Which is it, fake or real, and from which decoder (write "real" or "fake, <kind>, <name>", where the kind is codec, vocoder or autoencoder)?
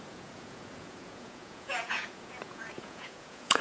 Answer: fake, vocoder, Vocos